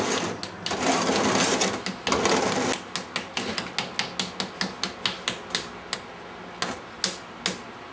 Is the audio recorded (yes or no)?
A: yes